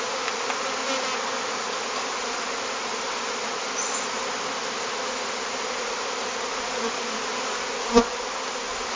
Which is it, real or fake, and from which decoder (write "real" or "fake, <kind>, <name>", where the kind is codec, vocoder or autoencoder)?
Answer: real